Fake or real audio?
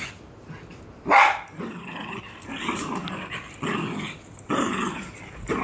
real